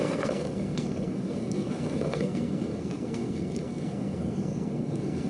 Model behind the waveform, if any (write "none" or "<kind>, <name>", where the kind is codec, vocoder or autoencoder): codec, SNAC